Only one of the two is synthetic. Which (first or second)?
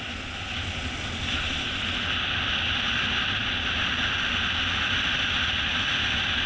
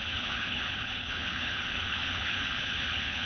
second